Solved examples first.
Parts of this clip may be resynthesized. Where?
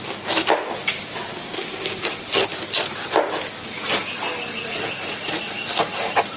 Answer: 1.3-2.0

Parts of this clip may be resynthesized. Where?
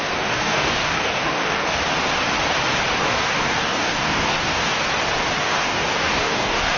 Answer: 0.0-1.8; 3.0-4.8; 5.4-6.8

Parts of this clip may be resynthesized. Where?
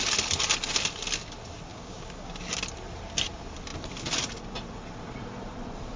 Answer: 1.7-2.3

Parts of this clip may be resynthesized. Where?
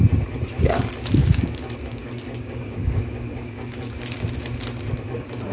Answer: 1.2-3.9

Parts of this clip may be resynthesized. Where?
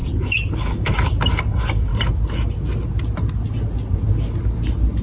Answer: 0.5-0.9; 1.5-1.9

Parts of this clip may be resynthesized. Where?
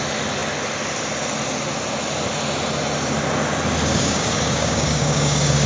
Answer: 3.9-5.7